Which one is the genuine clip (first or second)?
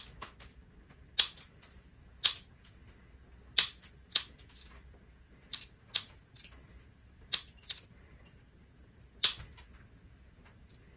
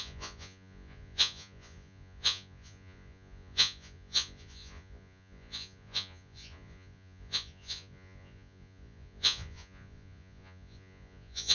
first